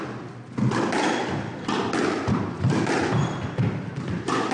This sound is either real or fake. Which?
fake